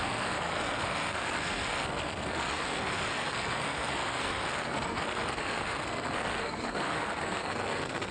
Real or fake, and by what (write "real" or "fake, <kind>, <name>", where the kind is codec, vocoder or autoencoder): fake, codec, SNAC